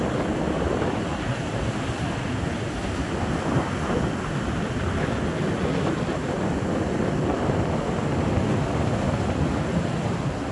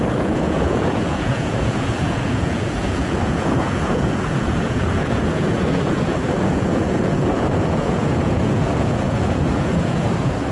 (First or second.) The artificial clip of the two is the second